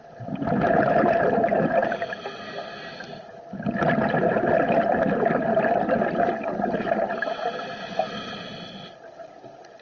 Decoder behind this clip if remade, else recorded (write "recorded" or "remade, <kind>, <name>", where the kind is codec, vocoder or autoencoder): recorded